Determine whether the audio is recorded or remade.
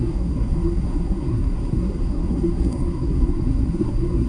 remade